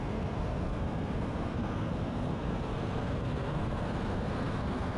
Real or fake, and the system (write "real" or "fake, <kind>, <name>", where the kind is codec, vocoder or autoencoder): fake, codec, SNAC